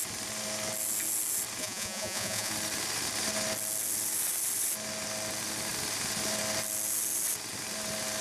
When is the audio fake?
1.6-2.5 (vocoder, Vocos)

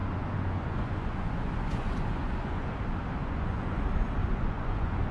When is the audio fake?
0.0-2.8 (vocoder, Vocos); 3.2-3.8; 4.2-5.1

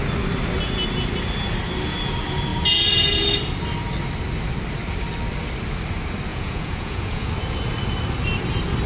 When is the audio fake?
6.3-7.3 (vocoder, Vocos)

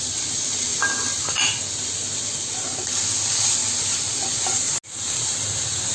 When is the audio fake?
none

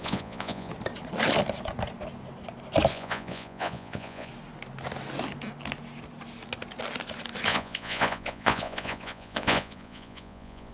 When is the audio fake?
0.0-0.7 (vocoder, Vocos); 2.9-4.3; 7.5-10.7

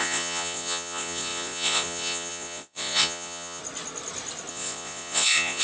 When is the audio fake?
0.0-3.6 (vocoder, Vocos); 4.5-5.6

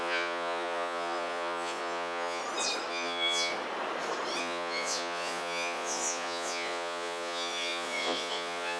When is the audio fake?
0.0-2.4 (vocoder, Vocos); 2.9-3.5; 4.4-8.8